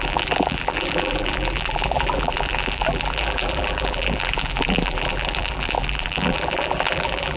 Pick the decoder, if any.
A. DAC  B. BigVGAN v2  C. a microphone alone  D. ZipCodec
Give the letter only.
B